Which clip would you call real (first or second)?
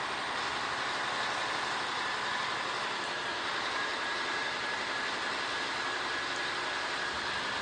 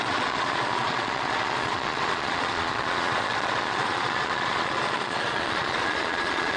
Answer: first